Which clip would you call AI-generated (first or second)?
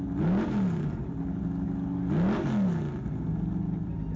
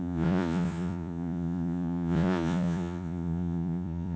second